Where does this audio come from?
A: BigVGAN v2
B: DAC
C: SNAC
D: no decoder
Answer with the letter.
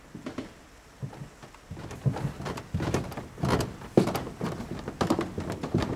D